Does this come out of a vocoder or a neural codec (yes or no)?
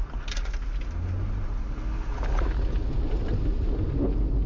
no